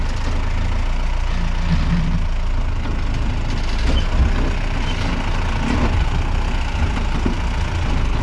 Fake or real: real